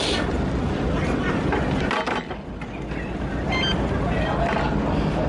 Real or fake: real